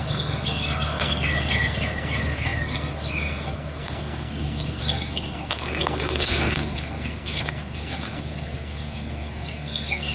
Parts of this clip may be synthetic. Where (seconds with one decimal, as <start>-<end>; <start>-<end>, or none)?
0.0-10.1